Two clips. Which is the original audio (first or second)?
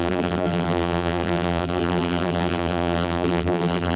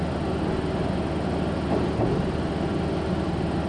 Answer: second